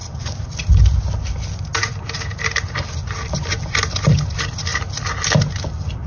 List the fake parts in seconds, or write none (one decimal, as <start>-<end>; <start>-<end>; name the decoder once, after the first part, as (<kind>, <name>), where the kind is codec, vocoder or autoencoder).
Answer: none